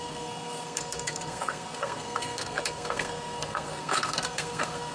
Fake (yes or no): yes